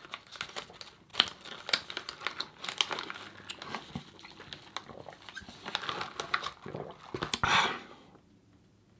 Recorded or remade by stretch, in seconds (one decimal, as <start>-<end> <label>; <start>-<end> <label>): 0.0-9.0 recorded